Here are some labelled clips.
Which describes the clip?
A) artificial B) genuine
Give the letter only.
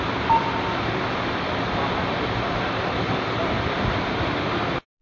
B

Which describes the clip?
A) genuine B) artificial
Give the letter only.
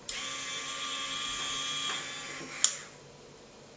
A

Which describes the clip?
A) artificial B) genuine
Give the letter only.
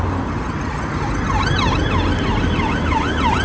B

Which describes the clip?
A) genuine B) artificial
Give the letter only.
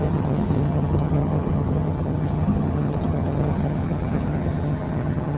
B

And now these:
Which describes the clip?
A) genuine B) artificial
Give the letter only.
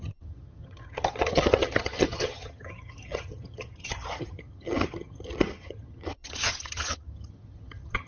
B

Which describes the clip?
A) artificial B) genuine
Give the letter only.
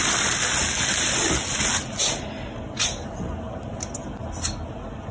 B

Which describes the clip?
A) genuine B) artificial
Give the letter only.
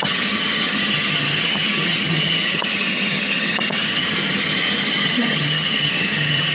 B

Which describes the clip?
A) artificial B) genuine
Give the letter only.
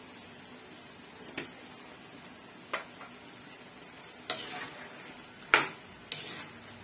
B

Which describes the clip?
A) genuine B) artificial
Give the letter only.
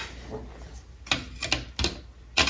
A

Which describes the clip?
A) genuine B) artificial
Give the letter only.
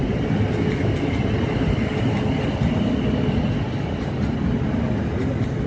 A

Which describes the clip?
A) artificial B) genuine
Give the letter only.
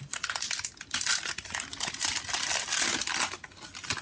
B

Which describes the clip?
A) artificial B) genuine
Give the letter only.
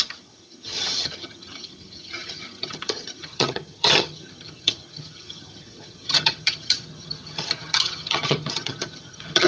A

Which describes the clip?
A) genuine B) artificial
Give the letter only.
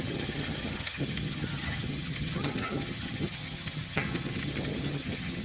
B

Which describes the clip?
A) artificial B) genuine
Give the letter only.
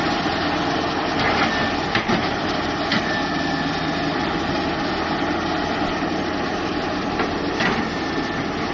B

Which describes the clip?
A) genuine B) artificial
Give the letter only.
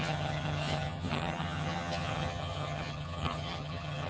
B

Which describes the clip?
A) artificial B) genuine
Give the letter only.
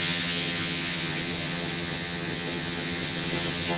A